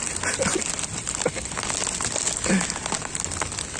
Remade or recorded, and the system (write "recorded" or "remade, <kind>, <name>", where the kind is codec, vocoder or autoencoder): recorded